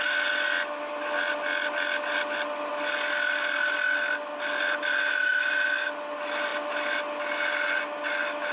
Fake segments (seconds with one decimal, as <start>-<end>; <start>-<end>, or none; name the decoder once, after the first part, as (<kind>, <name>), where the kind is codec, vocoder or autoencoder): none